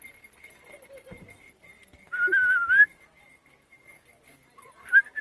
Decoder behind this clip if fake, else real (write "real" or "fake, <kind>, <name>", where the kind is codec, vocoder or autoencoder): real